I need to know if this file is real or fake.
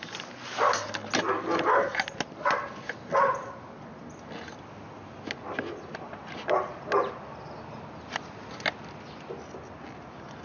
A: real